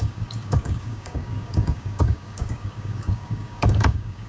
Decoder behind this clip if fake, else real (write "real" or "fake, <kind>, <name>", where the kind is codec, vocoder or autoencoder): fake, codec, DAC